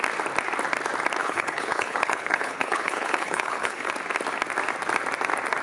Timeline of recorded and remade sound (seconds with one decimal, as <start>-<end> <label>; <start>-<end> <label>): 0.0-1.2 recorded; 1.2-3.9 remade; 3.9-5.6 recorded